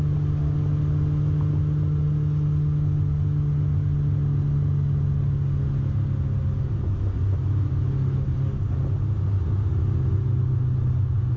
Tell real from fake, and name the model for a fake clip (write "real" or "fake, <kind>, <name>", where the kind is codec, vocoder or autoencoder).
real